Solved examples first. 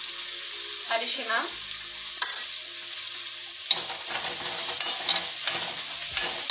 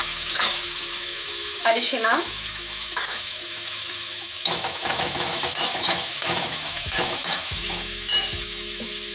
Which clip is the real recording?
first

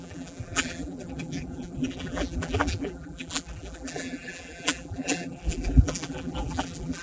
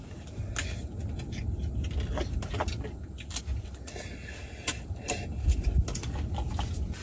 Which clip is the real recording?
second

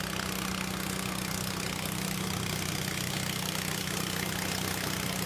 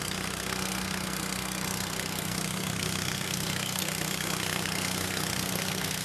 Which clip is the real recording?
first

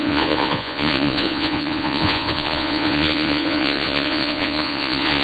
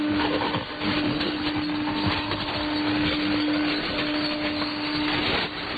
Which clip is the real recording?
second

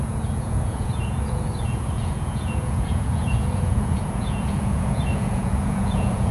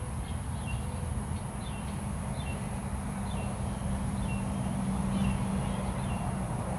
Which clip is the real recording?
second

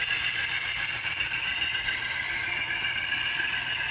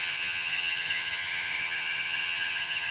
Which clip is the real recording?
first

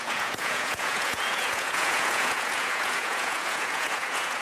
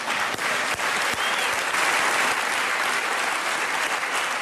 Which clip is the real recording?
second